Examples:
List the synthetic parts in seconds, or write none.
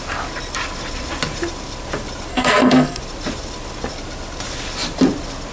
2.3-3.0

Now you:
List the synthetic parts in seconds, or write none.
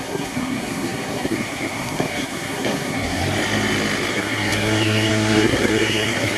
0.0-3.2; 4.1-6.4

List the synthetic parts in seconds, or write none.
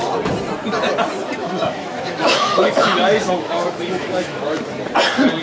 1.4-4.6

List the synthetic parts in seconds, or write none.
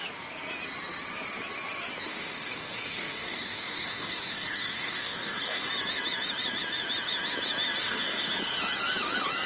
2.1-5.7; 7.8-8.3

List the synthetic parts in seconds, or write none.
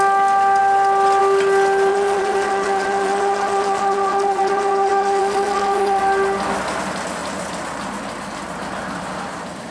1.9-6.0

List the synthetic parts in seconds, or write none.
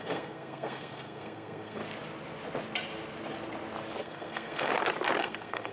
0.0-1.8; 4.0-4.7; 5.2-5.7